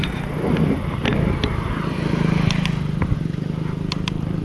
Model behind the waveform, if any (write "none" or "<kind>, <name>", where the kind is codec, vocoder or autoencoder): none